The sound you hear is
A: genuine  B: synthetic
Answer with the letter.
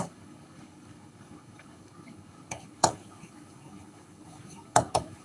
B